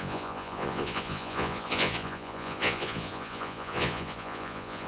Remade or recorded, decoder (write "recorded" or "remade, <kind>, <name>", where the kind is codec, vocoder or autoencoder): remade, vocoder, Vocos